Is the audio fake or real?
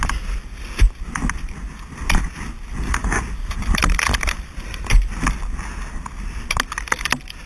real